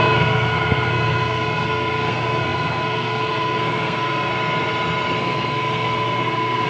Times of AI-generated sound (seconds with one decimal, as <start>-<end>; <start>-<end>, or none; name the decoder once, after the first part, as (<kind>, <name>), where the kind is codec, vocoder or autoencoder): 0.0-4.3 (codec, SNAC); 5.2-6.7